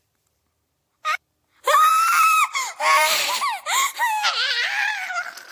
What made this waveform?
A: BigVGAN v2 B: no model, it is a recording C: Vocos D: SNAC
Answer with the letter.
A